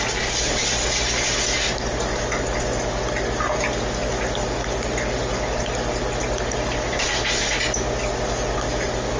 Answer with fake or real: real